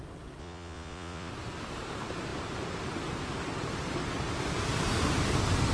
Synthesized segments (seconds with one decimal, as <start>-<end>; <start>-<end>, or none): 0.4-1.3